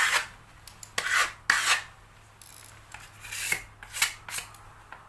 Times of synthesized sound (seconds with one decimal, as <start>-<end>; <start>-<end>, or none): none